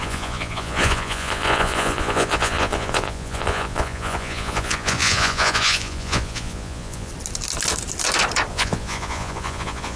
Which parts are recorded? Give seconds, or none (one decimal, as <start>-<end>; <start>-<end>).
7.1-8.5